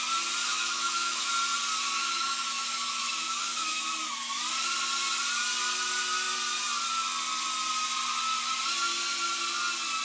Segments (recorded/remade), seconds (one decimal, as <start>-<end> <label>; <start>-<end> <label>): 0.0-0.4 recorded; 0.4-1.3 remade; 1.3-2.0 recorded; 2.0-4.1 remade; 4.1-10.0 recorded